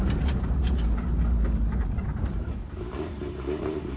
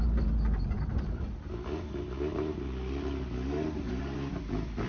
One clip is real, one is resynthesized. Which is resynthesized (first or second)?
first